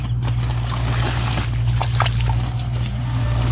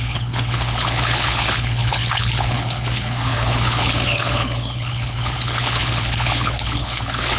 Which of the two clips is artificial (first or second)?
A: second